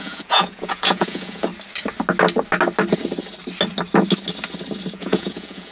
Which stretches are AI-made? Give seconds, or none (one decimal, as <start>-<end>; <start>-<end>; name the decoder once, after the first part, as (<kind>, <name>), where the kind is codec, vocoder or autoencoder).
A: 0.0-1.5 (vocoder, Vocos); 4.9-5.7